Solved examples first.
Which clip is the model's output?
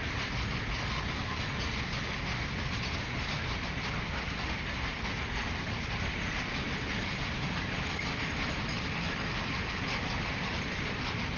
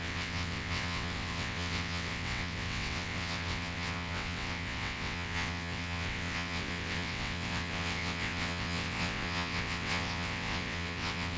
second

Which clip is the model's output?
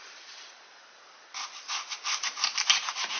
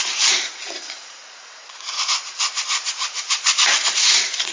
second